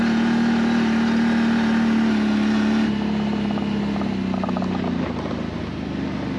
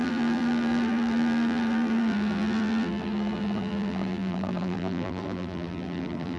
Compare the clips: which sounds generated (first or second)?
second